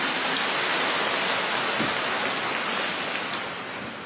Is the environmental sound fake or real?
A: real